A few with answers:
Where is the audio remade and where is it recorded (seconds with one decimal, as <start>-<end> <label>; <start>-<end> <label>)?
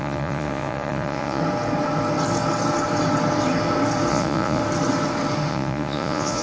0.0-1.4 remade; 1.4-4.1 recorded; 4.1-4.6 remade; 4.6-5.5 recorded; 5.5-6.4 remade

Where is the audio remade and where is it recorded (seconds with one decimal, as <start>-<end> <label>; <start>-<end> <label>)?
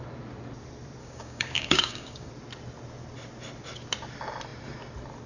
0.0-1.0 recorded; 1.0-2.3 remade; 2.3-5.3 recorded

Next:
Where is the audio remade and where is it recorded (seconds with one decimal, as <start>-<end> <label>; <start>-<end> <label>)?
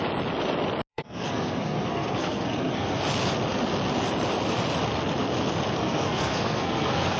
0.0-0.9 recorded; 0.9-3.0 remade; 3.0-5.8 recorded; 5.8-7.2 remade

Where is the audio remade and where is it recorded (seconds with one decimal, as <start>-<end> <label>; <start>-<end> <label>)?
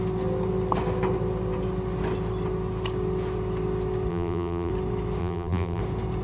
0.0-4.1 recorded; 4.1-4.7 remade; 4.7-5.2 recorded; 5.2-5.8 remade; 5.8-6.2 recorded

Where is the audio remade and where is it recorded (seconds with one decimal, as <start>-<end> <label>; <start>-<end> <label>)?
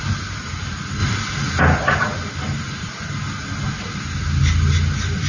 0.0-5.3 recorded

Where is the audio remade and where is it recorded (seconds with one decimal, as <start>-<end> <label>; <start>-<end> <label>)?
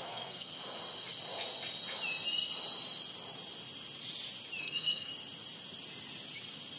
0.0-0.5 remade; 0.5-4.6 recorded; 4.6-5.1 remade; 5.1-6.8 recorded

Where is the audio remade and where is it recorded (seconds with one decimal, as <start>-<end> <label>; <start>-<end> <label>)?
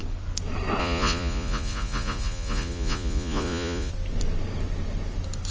0.0-0.8 recorded; 0.8-3.9 remade; 3.9-5.5 recorded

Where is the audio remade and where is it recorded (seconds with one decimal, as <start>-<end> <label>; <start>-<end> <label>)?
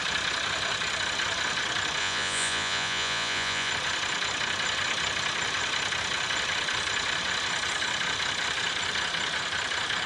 0.0-2.0 recorded; 2.0-3.7 remade; 3.7-10.1 recorded